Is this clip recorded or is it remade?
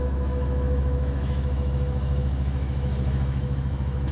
remade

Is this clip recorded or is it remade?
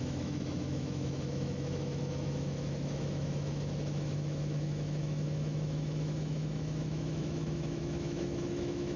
remade